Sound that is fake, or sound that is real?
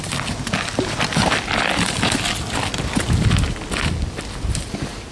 real